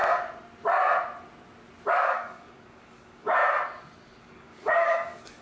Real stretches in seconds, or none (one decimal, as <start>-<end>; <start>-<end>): 0.0-1.9; 3.4-4.2